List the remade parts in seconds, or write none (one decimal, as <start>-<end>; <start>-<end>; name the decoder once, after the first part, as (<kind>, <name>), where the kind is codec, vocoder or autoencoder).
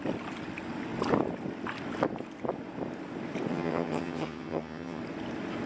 3.5-5.0 (vocoder, HiFi-GAN)